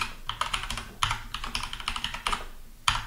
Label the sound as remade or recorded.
recorded